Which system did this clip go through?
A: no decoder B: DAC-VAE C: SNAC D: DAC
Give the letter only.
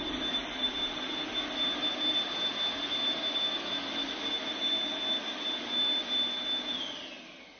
A